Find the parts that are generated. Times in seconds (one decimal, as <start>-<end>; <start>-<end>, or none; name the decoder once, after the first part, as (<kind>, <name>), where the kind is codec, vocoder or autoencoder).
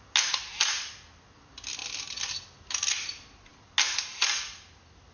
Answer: none